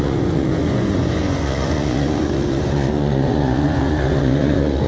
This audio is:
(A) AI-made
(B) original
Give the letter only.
A